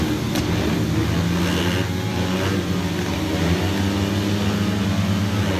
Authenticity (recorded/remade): recorded